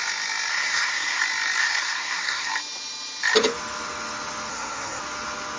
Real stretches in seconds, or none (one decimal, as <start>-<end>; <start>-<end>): 0.0-0.5; 1.2-1.6; 2.5-4.5; 5.0-5.6